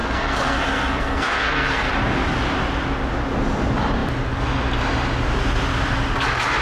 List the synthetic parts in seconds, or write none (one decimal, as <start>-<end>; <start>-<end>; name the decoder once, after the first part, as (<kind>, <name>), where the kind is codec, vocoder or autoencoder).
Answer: 0.0-1.9 (codec, SNAC)